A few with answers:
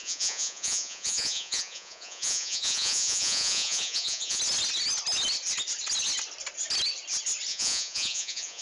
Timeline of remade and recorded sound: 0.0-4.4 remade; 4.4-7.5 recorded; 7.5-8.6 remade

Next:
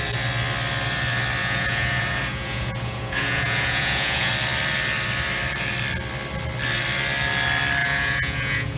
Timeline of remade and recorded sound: 0.0-1.4 recorded; 1.4-4.3 remade; 4.3-7.8 recorded; 7.8-8.8 remade